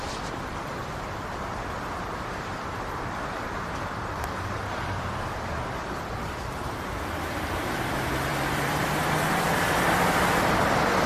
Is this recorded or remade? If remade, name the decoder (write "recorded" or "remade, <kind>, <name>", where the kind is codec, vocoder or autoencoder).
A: remade, vocoder, BigVGAN v2